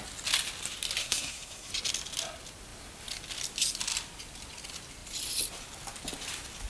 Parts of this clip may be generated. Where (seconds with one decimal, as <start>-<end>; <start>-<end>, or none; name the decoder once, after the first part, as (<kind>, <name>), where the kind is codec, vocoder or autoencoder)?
1.0-1.7 (codec, SNAC)